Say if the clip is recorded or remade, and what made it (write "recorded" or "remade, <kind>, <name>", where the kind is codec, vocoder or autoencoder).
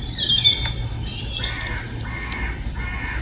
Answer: recorded